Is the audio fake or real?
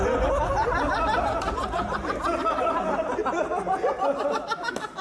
real